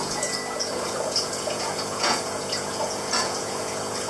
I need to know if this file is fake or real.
fake